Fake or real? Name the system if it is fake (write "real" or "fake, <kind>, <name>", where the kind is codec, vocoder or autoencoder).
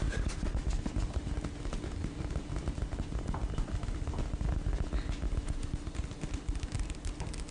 real